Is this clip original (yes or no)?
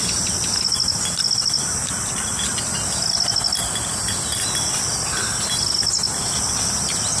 yes